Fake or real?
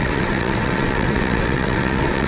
fake